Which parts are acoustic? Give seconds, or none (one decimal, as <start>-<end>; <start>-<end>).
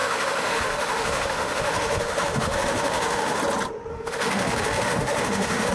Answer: 3.4-3.9